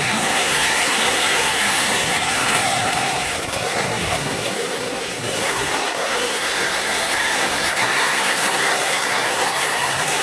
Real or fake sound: fake